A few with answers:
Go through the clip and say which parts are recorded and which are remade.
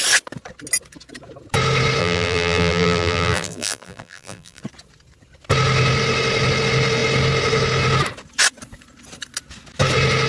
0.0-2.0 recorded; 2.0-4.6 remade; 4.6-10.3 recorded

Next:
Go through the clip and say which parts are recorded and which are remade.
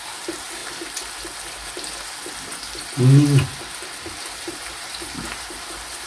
0.0-0.6 remade; 0.6-4.3 recorded; 4.3-6.1 remade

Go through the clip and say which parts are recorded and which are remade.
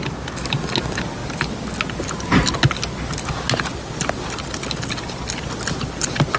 0.0-6.4 recorded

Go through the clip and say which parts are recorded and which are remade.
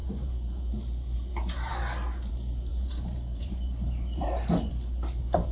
0.0-0.6 remade; 0.6-2.7 recorded; 2.7-4.7 remade; 4.7-5.5 recorded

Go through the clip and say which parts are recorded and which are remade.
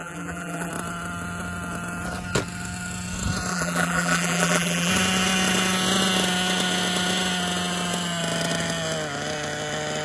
0.0-0.7 remade; 0.7-3.5 recorded; 3.5-4.9 remade; 4.9-10.0 recorded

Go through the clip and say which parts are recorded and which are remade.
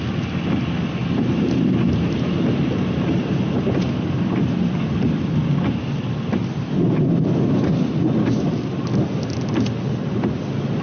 0.0-1.0 recorded; 1.0-5.0 remade; 5.0-10.8 recorded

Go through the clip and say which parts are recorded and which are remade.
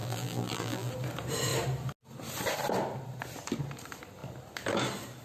0.0-0.9 remade; 0.9-5.2 recorded